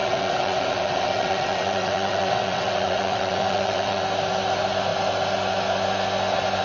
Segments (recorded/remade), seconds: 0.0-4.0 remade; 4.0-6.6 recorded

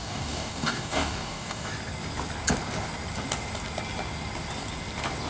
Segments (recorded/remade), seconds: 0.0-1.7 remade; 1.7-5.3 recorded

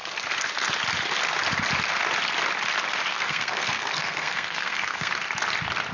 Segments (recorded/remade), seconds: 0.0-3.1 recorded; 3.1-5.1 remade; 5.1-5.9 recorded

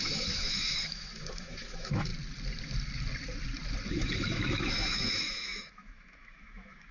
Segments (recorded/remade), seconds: 0.0-2.1 remade; 2.1-3.9 recorded; 3.9-6.9 remade

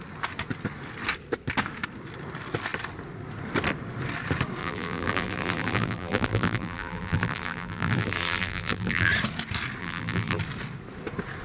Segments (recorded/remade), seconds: 0.0-4.6 recorded; 4.6-9.1 remade; 9.1-9.8 recorded; 9.8-10.4 remade; 10.4-11.4 recorded

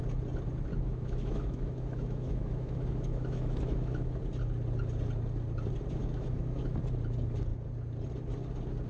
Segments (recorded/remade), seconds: 0.0-0.7 recorded; 0.7-4.2 remade; 4.2-6.0 recorded; 6.0-6.6 remade; 6.6-8.9 recorded